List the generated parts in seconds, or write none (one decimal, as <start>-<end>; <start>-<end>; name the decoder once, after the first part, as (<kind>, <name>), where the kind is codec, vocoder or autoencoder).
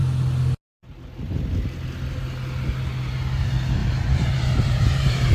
3.8-5.3 (vocoder, BigVGAN v2)